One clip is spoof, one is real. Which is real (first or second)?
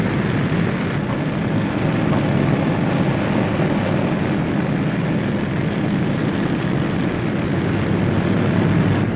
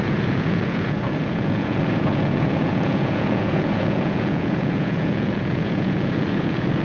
first